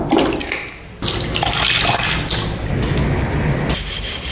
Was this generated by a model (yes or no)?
no